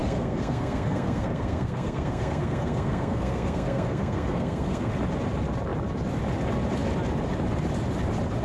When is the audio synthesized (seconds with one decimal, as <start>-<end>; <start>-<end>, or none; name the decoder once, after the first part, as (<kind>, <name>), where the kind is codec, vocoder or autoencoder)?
0.0-4.9 (codec, SNAC)